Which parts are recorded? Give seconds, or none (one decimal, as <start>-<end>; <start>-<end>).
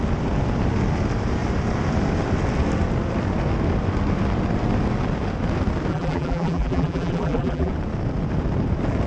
0.0-5.9; 7.7-9.1